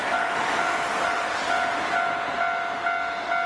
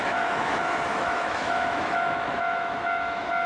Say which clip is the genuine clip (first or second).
first